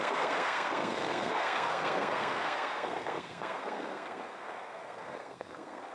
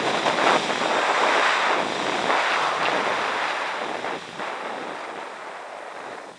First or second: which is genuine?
second